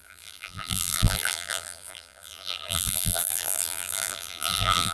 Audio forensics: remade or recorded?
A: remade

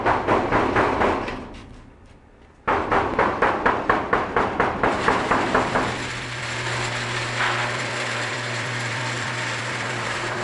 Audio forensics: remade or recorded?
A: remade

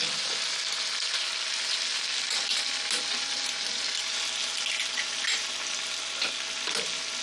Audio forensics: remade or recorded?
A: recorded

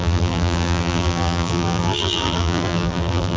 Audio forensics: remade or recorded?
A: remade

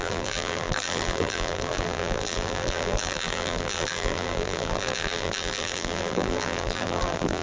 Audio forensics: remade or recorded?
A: remade